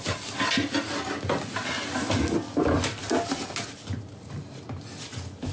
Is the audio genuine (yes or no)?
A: yes